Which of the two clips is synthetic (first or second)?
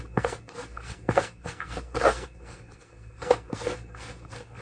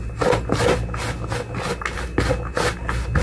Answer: first